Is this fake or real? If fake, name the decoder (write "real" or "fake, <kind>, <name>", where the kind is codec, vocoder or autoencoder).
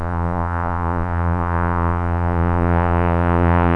fake, vocoder, Vocos